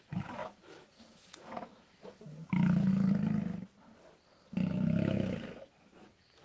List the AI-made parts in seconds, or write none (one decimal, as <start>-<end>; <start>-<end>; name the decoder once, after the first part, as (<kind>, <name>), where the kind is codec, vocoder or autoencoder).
0.0-2.9 (autoencoder, DAC-VAE); 4.7-6.4